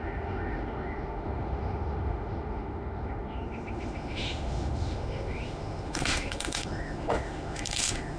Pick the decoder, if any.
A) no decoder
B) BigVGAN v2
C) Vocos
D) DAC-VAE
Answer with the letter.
D